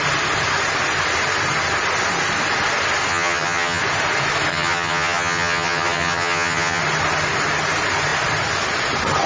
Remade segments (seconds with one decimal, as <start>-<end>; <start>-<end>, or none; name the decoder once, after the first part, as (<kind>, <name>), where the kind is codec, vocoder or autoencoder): 3.1-3.8 (vocoder, HiFi-GAN); 4.5-6.8